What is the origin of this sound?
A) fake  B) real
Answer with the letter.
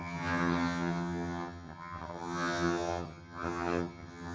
A